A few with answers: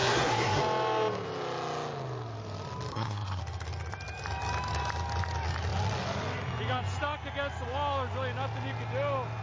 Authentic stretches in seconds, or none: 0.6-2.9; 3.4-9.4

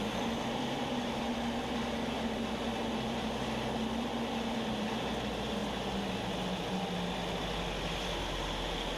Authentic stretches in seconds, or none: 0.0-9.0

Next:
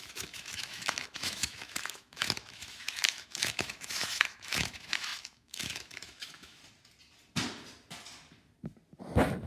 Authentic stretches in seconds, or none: 6.6-9.5

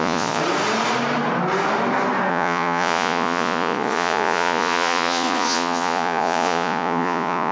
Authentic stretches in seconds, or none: 0.4-2.3